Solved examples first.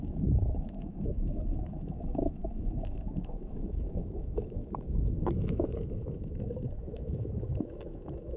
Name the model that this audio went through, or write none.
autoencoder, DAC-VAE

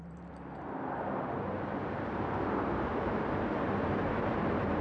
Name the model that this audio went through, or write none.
vocoder, BigVGAN v2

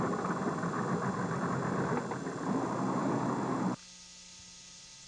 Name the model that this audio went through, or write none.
none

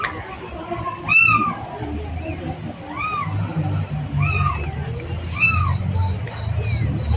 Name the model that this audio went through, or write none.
vocoder, BigVGAN v2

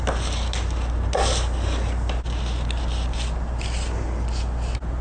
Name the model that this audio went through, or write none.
none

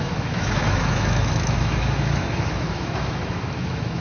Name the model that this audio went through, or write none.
autoencoder, DAC-VAE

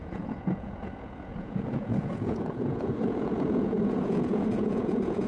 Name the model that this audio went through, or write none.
vocoder, Vocos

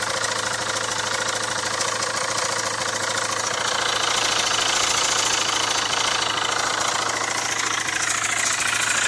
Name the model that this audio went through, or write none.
none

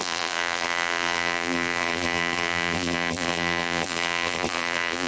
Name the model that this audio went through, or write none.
vocoder, BigVGAN v2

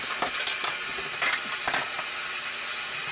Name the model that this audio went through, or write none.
none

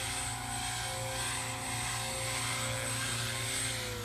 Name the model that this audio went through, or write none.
none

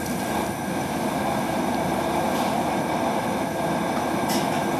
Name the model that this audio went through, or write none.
none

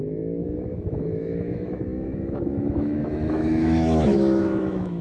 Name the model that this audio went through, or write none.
autoencoder, DAC-VAE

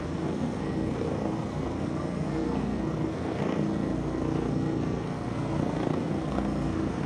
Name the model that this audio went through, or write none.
codec, SNAC